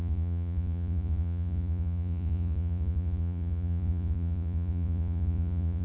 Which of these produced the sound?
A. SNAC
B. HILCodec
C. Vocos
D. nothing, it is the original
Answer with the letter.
C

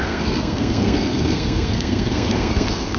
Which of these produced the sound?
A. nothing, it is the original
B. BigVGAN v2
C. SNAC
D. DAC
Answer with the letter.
C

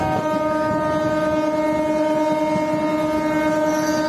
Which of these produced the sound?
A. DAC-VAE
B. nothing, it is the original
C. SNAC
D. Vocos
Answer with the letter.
B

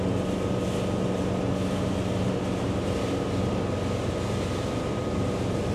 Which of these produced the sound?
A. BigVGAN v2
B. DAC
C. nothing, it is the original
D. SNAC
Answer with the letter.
C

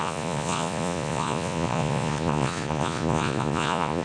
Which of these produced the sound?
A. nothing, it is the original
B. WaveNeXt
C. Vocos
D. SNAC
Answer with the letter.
C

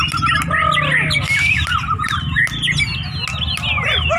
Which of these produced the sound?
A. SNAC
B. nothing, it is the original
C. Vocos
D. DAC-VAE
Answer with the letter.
B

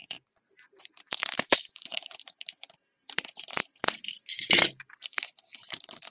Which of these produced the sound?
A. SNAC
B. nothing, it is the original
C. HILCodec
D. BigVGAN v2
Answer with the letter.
D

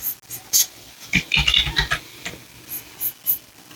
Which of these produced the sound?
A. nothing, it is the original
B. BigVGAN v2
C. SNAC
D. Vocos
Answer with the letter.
A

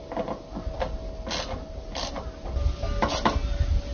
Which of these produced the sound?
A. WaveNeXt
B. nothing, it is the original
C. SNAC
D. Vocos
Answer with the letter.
B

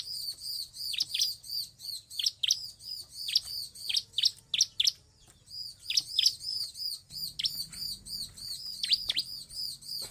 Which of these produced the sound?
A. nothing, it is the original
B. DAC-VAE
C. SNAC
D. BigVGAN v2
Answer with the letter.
A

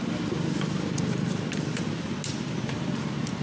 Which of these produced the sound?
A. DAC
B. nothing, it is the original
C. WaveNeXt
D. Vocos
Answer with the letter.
B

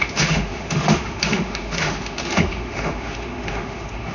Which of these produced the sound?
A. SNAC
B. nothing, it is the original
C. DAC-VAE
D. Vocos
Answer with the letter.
C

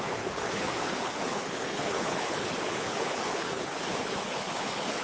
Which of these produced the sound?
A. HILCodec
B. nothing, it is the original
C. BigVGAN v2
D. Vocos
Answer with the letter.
A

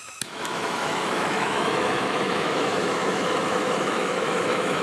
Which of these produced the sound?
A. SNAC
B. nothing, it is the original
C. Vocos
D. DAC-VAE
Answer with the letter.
D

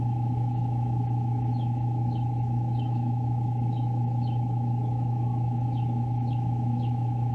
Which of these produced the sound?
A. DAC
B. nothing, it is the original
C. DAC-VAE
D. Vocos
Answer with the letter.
C